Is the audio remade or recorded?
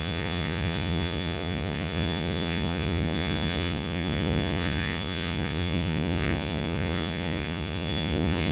remade